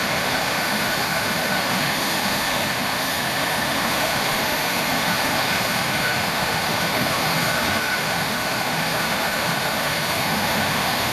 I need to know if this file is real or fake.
fake